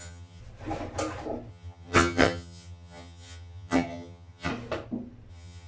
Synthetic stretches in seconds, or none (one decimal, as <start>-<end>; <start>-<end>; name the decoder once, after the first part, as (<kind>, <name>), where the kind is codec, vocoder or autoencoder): 0.0-0.4 (vocoder, HiFi-GAN); 1.5-4.5; 5.3-5.7